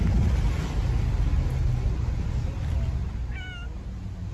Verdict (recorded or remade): recorded